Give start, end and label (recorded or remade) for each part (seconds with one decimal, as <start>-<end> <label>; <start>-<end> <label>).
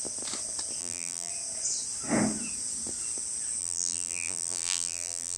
0.0-0.8 recorded; 0.8-1.3 remade; 1.3-3.6 recorded; 3.6-5.4 remade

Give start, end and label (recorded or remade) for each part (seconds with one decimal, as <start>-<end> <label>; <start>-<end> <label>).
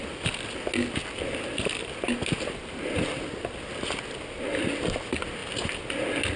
0.0-6.4 recorded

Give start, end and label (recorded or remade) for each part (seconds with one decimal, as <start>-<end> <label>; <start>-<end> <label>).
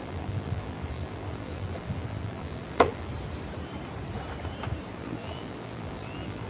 0.0-3.1 remade; 3.1-4.9 recorded; 4.9-6.5 remade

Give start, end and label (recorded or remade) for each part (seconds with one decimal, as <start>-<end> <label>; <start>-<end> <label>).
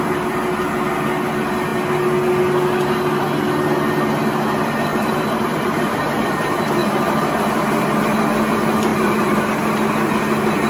0.0-4.9 recorded; 4.9-6.0 remade; 6.0-6.8 recorded; 6.8-7.9 remade; 7.9-8.9 recorded; 8.9-9.4 remade; 9.4-10.7 recorded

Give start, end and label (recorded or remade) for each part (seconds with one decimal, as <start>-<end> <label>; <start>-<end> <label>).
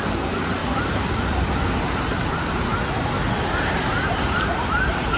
0.0-0.6 recorded; 0.6-2.3 remade; 2.3-5.2 recorded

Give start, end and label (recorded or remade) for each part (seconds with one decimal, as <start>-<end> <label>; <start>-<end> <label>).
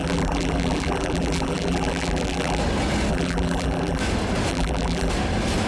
0.0-2.6 remade; 2.6-3.1 recorded; 3.1-4.0 remade; 4.0-4.5 recorded; 4.5-5.1 remade; 5.1-5.7 recorded